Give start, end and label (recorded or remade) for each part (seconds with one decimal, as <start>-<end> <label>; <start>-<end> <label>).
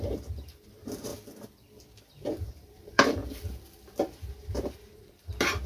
0.0-1.1 remade; 1.1-2.5 recorded; 2.5-3.2 remade; 3.2-4.3 recorded; 4.3-5.7 remade